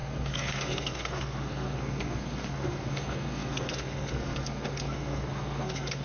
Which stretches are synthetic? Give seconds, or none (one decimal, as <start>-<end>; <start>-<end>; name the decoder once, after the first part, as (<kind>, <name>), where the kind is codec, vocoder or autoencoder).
0.0-6.0 (codec, SNAC)